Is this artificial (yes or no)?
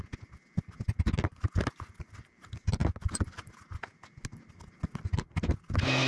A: no